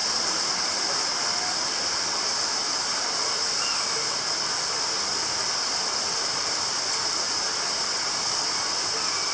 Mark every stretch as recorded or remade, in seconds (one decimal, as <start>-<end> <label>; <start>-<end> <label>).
0.0-9.3 recorded